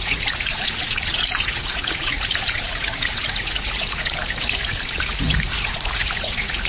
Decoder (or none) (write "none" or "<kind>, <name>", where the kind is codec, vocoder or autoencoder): vocoder, Vocos